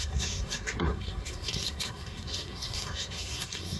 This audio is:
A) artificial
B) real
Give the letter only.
A